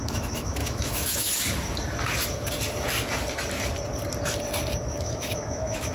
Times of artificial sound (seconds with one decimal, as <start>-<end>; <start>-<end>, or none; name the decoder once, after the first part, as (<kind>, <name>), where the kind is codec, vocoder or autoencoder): 0.0-1.3 (autoencoder, DAC-VAE); 4.8-5.9

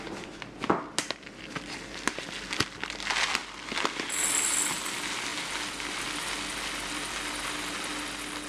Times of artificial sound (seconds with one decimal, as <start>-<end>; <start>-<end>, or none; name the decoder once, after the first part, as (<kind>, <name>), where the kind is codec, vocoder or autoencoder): none

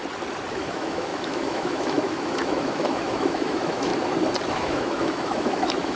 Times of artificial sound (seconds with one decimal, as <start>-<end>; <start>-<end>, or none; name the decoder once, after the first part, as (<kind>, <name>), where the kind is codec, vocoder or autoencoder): 0.5-3.9 (autoencoder, DAC-VAE); 4.5-6.0

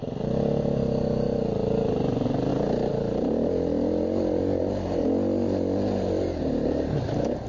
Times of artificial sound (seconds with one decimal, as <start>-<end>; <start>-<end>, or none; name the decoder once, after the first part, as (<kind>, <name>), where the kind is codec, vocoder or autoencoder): none

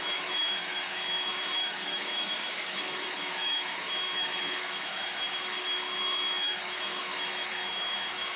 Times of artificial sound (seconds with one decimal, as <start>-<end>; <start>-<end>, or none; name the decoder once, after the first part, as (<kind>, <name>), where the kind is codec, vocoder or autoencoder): 0.0-8.4 (autoencoder, DAC-VAE)